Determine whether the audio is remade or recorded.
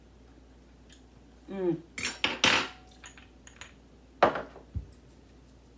recorded